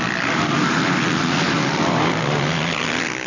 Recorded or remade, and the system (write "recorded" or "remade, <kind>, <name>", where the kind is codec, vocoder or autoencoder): recorded